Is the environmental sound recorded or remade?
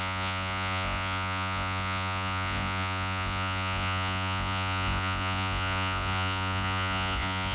remade